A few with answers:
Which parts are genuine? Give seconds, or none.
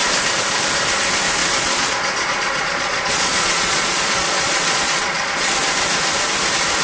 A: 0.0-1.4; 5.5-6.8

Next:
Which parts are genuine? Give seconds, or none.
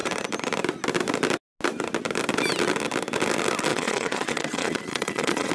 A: 0.0-3.7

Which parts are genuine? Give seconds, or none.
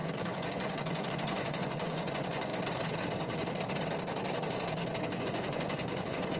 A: 2.5-5.2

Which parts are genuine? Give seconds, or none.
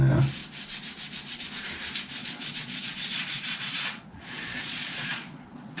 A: 0.0-2.2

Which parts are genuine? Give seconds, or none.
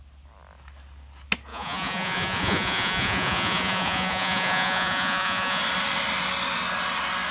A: 0.0-1.5; 5.6-7.3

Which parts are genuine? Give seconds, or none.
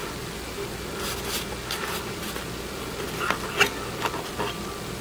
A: 0.0-5.0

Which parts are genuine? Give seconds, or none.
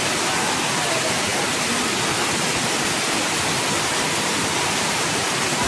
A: 0.0-5.7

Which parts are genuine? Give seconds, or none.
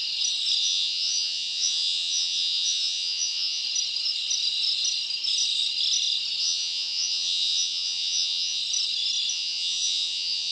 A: 0.0-0.6; 3.6-6.4; 8.6-9.3